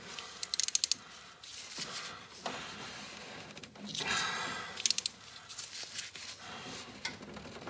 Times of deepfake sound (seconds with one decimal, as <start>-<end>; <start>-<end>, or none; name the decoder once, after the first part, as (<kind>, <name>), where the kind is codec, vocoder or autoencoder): none